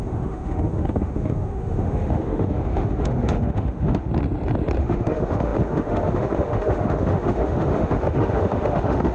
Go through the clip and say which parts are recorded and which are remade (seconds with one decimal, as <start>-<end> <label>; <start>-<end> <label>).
0.0-4.1 remade; 4.1-4.8 recorded; 4.8-9.1 remade